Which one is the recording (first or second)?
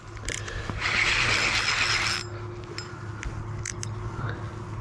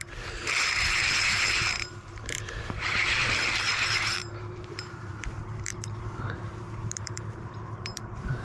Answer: first